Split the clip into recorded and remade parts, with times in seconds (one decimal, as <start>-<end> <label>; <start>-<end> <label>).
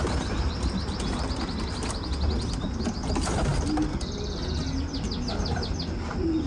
0.0-6.5 recorded